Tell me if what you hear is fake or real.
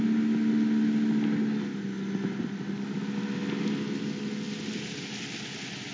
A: real